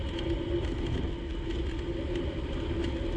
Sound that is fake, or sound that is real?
real